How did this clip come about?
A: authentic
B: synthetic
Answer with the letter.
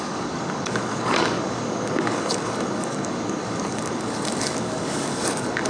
B